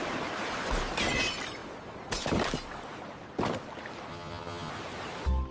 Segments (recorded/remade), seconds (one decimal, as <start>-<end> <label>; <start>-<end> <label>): 0.0-4.1 recorded; 4.1-4.7 remade; 4.7-5.5 recorded